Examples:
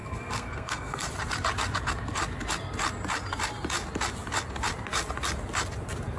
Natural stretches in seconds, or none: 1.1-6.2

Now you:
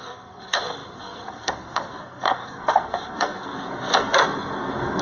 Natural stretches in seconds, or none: none

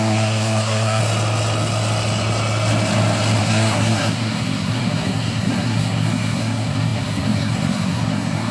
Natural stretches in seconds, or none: 1.0-3.4

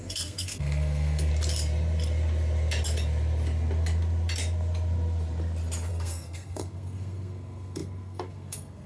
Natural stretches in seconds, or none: 1.3-5.9

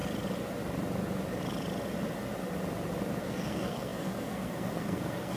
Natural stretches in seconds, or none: 0.0-3.2

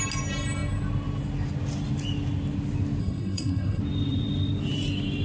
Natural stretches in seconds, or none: 0.0-3.0; 3.8-5.2

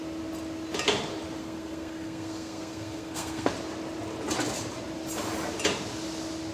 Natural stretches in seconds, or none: 0.0-1.4; 3.5-6.5

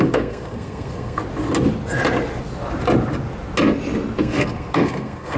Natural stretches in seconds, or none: 1.2-4.2